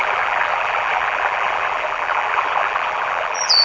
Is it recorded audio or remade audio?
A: remade